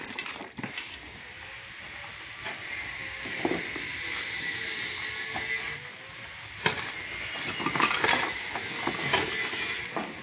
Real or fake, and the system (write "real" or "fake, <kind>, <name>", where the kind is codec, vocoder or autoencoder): real